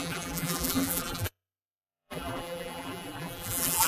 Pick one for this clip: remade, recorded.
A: remade